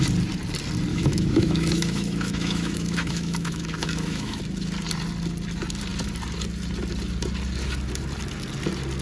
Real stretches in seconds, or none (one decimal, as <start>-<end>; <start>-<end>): 0.0-0.9; 4.4-9.0

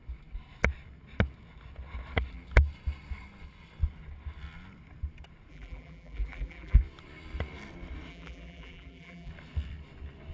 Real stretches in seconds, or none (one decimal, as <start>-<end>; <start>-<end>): 0.0-5.5; 6.8-8.1; 9.3-10.3

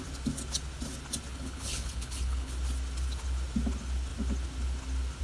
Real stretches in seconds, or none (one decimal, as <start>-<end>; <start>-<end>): 0.0-1.3; 2.5-5.2